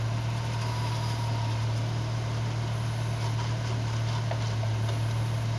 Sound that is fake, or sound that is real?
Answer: real